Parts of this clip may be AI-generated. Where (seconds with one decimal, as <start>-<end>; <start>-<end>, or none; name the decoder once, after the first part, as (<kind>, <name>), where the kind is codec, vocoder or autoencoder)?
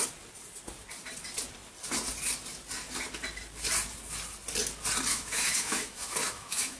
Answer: 5.1-6.8 (autoencoder, DAC-VAE)